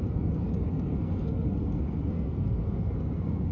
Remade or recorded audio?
remade